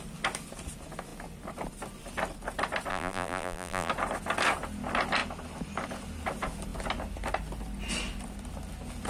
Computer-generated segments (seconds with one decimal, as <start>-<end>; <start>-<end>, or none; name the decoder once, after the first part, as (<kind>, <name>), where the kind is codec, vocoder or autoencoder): 2.9-3.9 (vocoder, BigVGAN v2)